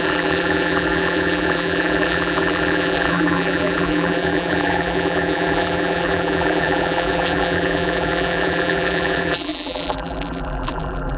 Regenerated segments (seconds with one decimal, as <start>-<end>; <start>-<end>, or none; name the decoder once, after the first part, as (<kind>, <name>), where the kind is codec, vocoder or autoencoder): 0.0-11.2 (vocoder, BigVGAN v2)